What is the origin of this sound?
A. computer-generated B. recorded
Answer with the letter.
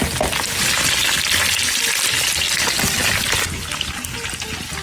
B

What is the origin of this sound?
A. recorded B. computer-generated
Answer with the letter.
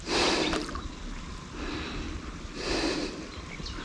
A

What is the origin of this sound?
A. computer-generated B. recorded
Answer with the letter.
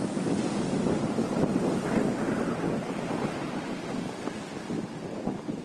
B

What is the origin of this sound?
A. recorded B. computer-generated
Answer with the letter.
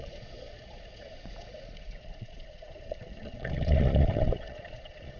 B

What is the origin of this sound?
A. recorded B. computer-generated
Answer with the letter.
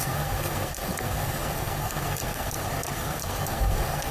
B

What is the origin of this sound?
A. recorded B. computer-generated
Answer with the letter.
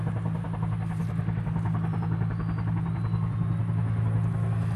A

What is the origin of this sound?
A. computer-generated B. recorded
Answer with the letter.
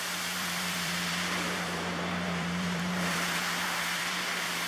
A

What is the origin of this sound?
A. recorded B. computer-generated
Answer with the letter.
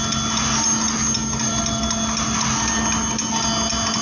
A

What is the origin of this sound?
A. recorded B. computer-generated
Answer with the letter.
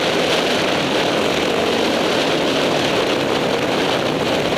A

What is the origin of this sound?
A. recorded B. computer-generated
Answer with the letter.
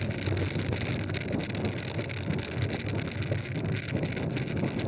A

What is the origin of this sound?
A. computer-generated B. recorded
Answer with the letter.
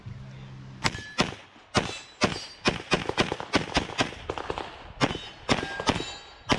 B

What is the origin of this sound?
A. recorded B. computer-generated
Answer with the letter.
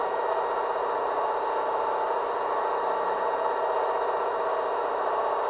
A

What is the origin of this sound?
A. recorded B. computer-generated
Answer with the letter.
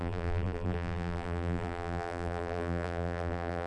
B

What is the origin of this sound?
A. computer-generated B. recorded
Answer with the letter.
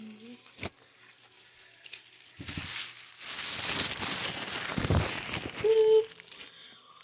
B